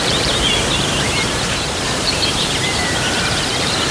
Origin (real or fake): fake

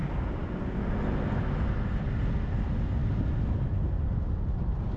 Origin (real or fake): real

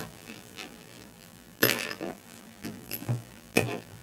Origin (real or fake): fake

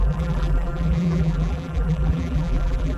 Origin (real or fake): fake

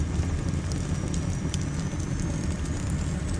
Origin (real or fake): real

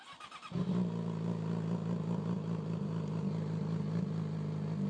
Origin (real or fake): real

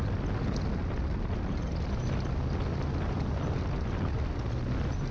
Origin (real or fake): real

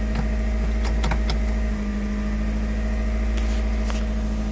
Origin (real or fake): real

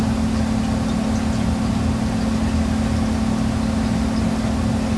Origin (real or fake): real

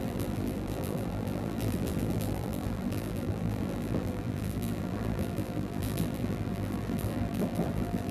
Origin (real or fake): fake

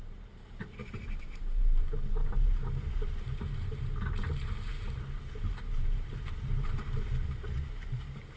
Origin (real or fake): fake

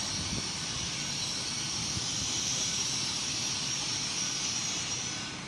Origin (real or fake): fake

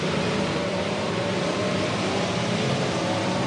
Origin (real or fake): fake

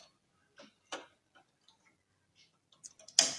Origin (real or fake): real